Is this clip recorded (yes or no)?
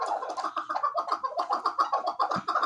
yes